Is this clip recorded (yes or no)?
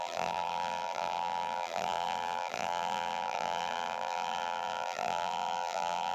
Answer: no